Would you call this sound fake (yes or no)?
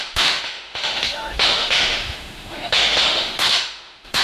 yes